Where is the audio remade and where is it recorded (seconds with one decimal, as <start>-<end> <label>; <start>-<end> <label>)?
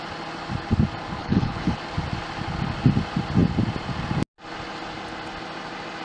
0.0-1.2 recorded; 1.2-1.8 remade; 1.8-6.0 recorded